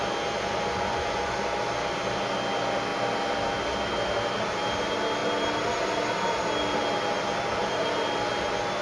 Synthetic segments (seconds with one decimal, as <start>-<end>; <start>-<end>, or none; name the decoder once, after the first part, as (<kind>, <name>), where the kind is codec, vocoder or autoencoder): 0.5-1.4 (vocoder, Vocos)